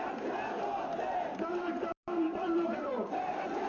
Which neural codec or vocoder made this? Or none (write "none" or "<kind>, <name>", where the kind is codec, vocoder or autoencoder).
vocoder, BigVGAN v2